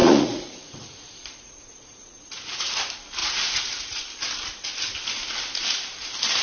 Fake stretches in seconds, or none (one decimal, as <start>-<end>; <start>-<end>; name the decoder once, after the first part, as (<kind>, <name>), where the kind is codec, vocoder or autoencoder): 0.0-2.7 (vocoder, Vocos); 3.2-4.0